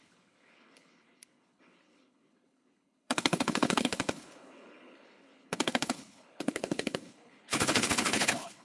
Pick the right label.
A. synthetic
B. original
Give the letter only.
A